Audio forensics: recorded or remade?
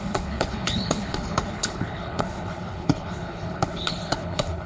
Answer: remade